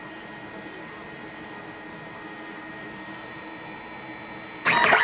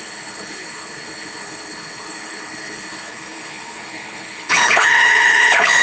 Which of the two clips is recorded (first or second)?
first